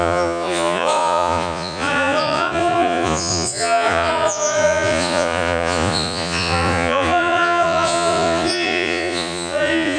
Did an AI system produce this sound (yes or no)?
yes